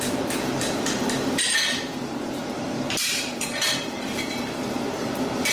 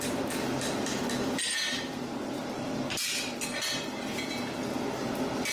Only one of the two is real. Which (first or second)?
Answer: second